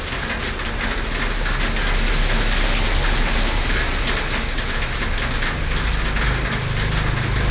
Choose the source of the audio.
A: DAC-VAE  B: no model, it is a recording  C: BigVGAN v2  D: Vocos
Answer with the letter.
B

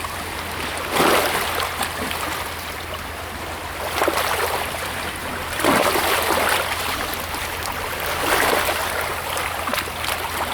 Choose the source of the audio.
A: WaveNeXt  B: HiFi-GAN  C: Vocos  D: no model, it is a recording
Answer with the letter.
D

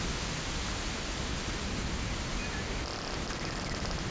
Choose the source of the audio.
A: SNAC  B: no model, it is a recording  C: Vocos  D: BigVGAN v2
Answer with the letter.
B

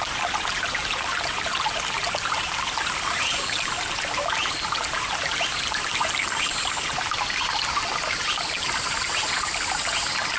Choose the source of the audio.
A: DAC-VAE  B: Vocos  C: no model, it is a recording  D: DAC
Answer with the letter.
C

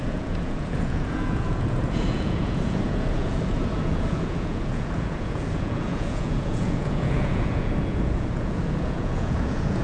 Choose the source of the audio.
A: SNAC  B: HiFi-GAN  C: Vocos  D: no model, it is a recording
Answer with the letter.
C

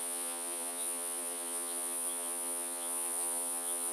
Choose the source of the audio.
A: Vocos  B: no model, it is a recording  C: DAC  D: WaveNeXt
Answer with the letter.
A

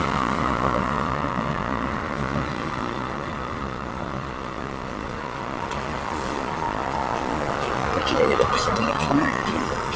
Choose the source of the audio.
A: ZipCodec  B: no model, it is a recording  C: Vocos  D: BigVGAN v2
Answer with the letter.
C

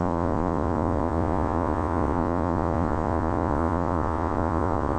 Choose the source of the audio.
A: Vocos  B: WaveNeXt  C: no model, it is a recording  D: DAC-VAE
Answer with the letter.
A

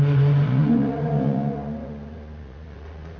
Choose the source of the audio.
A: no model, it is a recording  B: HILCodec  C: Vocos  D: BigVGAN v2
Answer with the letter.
C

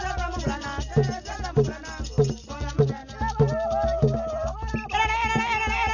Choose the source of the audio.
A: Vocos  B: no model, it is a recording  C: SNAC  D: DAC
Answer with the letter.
B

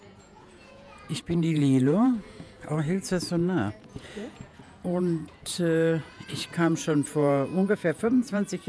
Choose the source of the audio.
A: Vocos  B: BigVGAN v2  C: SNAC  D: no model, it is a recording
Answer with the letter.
A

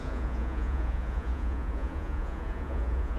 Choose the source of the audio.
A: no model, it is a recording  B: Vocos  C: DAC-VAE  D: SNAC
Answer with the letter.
B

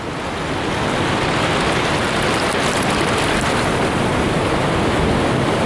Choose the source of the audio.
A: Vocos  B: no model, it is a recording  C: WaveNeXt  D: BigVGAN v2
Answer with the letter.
B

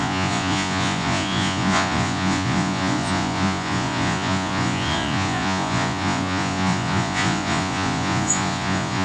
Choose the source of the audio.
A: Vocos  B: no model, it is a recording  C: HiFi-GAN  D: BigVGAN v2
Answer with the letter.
A